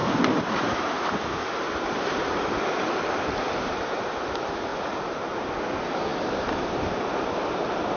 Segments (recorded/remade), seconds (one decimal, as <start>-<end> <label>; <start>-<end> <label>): 0.0-4.0 remade; 4.0-4.7 recorded; 4.7-5.3 remade; 5.3-6.1 recorded; 6.1-6.8 remade; 6.8-8.0 recorded